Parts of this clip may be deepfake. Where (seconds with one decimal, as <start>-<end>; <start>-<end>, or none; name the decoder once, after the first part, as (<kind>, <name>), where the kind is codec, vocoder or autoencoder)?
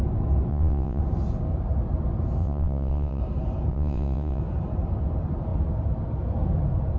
0.5-1.0 (vocoder, WaveNeXt); 2.4-3.2; 3.7-4.4